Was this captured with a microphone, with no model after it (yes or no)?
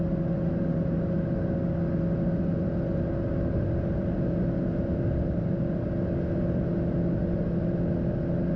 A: yes